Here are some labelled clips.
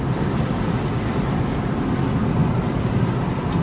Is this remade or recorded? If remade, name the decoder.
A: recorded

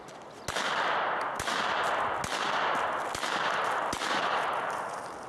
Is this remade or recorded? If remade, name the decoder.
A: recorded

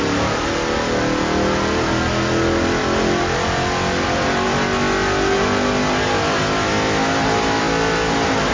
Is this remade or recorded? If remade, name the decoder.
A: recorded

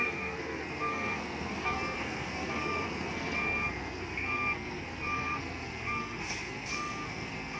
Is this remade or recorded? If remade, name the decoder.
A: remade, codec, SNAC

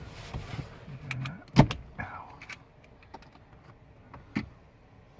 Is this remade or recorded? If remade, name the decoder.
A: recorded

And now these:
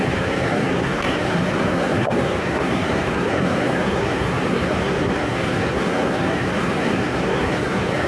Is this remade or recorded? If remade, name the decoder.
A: remade, codec, SNAC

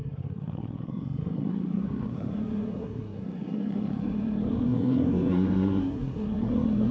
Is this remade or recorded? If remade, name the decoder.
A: remade, codec, SNAC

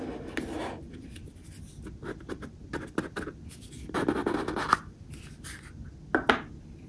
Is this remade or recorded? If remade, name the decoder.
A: recorded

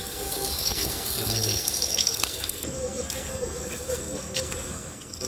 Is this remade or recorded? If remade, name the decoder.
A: remade, codec, SNAC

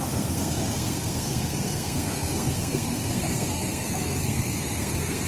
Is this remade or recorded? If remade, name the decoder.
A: remade, codec, SNAC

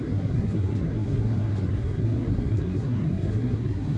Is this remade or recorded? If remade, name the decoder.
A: remade, codec, SNAC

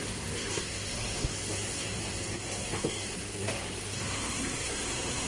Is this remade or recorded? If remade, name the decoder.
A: remade, codec, SNAC